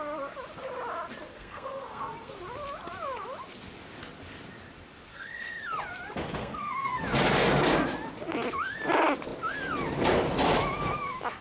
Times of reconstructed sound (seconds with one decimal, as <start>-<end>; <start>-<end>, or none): 1.3-2.3; 5.1-5.6; 6.4-7.0